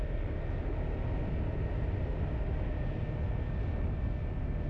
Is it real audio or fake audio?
real